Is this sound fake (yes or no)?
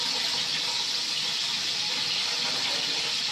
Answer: no